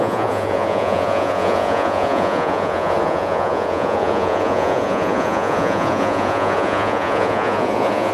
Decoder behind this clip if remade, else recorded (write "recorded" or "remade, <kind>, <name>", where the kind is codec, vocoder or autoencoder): remade, vocoder, Vocos